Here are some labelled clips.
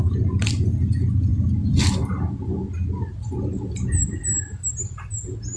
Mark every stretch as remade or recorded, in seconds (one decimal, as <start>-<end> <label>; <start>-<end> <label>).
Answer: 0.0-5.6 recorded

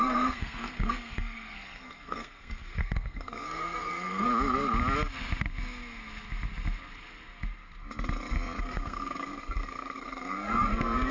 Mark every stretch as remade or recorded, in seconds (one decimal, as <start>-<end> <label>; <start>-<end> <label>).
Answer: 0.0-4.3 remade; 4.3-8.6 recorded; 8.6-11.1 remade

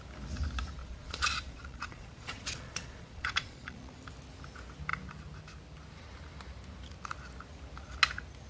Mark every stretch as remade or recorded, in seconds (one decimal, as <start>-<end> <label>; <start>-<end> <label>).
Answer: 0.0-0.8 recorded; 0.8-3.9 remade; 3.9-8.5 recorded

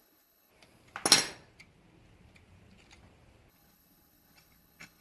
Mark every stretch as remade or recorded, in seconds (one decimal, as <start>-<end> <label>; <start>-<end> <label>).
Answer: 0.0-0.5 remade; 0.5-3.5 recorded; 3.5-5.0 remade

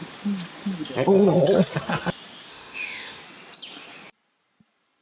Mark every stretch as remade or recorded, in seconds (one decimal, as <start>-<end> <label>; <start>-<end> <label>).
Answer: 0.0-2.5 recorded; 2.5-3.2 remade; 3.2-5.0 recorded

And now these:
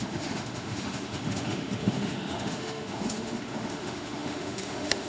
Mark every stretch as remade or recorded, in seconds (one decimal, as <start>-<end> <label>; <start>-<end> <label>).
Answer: 0.0-5.1 remade

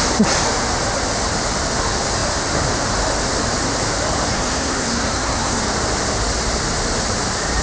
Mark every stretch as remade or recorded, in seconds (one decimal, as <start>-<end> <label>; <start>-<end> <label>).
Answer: 0.0-4.3 recorded; 4.3-5.6 remade; 5.6-7.6 recorded

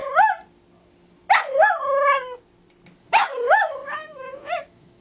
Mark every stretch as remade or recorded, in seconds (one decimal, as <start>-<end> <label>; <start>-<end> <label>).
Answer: 0.0-3.0 recorded; 3.0-5.0 remade